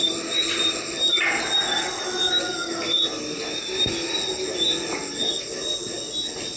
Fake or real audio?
real